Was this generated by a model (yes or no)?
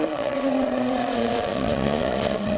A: yes